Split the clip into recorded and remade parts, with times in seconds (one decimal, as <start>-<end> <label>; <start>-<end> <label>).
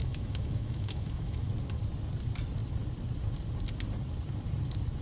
0.0-1.5 remade; 1.5-5.0 recorded